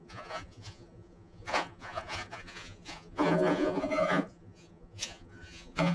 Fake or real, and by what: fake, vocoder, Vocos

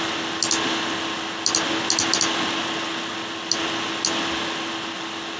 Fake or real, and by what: real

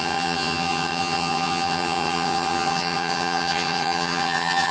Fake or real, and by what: fake, vocoder, HiFi-GAN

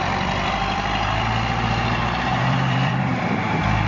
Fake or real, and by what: fake, vocoder, BigVGAN v2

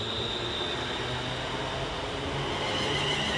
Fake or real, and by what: real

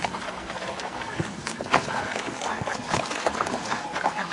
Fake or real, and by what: fake, codec, SNAC